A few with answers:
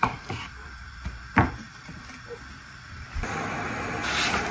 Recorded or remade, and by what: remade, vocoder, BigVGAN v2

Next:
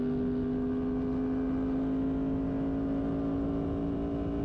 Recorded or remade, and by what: recorded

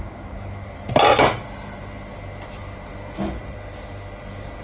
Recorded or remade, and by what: recorded